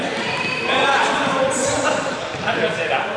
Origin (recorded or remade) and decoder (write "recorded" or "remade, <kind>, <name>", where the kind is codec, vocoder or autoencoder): recorded